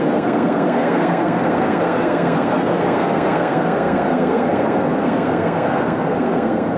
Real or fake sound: fake